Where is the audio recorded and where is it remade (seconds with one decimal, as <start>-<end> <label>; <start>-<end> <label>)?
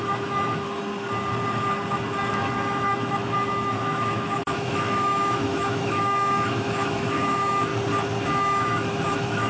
0.0-0.8 remade; 0.8-2.3 recorded; 2.3-7.7 remade; 7.7-8.4 recorded; 8.4-9.5 remade